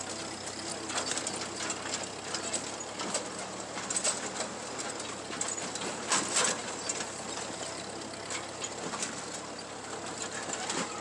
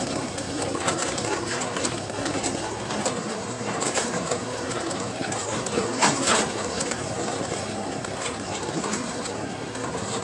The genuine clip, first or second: first